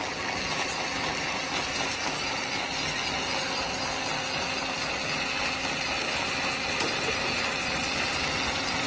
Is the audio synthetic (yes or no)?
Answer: no